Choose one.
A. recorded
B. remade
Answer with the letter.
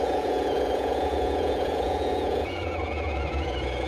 B